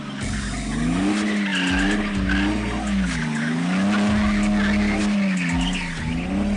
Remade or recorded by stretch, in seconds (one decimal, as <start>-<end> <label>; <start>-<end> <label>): 0.0-6.6 recorded